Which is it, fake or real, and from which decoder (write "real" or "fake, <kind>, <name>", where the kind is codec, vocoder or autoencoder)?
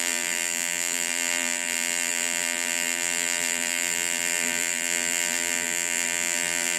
fake, vocoder, BigVGAN v2